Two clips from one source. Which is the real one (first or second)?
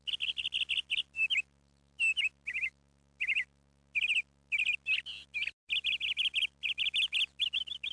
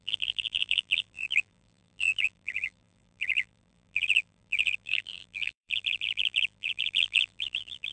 first